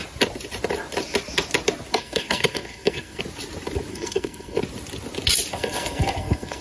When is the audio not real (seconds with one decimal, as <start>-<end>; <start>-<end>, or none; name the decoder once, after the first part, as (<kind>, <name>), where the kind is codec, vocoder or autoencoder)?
1.9-3.2 (codec, SNAC); 3.9-4.6; 5.5-6.6